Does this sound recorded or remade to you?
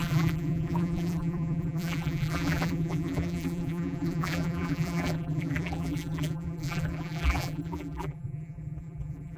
remade